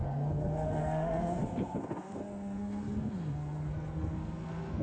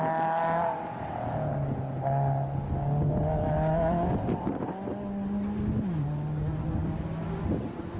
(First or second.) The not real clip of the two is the first